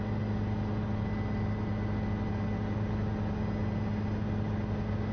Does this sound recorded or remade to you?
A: recorded